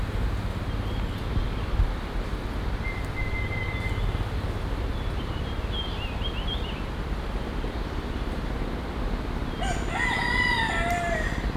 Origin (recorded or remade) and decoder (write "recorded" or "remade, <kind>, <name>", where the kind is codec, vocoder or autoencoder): recorded